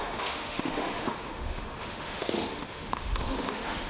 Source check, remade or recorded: remade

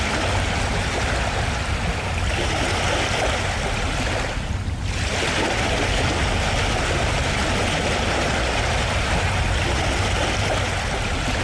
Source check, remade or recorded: recorded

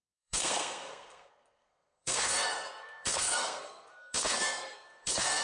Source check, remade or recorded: remade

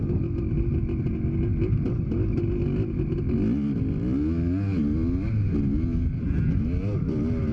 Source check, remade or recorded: recorded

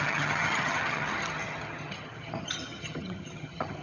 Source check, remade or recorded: remade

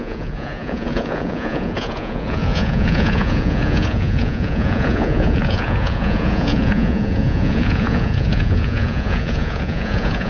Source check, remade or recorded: remade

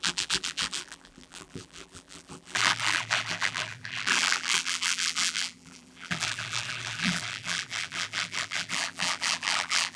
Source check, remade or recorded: remade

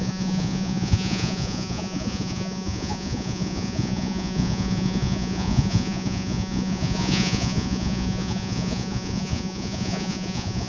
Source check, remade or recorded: remade